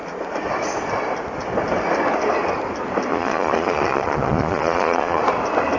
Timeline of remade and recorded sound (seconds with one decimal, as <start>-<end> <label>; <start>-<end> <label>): 0.0-3.1 recorded; 3.1-5.2 remade; 5.2-5.8 recorded